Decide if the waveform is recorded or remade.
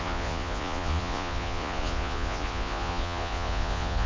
remade